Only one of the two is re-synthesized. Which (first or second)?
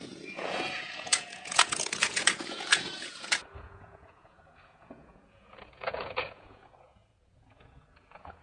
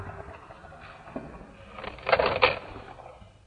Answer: first